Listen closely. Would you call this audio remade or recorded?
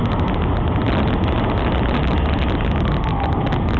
recorded